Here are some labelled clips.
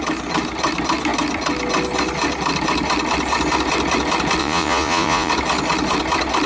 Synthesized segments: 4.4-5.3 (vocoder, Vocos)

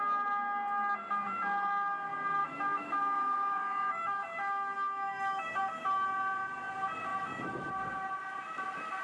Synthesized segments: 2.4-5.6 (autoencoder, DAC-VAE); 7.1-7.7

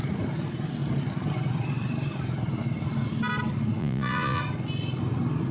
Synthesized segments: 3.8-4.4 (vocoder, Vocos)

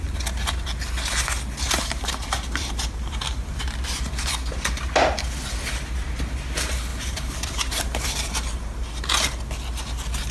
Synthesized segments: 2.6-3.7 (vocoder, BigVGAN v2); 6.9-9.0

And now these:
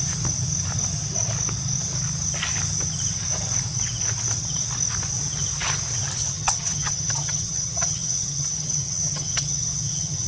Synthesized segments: 6.3-10.3 (vocoder, HiFi-GAN)